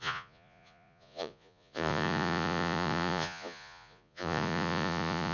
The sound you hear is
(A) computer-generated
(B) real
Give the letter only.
A